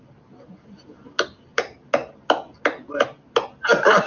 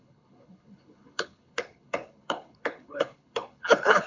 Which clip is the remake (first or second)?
second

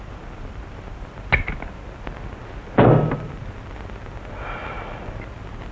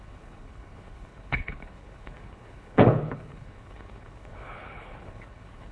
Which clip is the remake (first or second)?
second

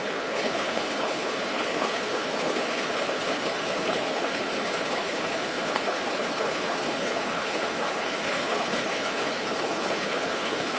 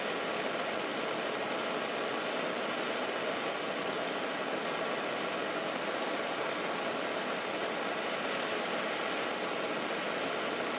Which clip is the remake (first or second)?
first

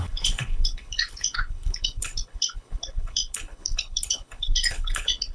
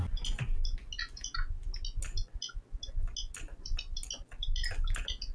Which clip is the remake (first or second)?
first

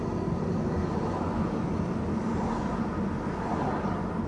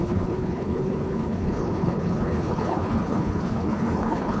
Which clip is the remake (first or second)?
second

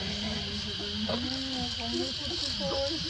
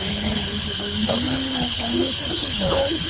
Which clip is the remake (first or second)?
second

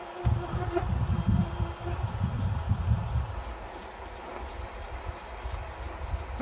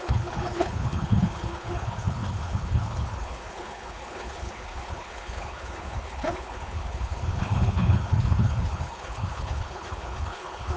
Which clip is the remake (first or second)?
second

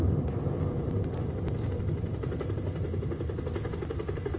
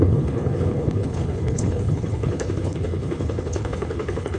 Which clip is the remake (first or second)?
second